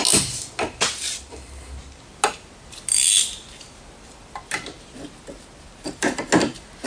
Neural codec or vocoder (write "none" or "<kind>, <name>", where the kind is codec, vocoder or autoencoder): none